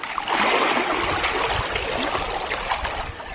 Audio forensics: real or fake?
real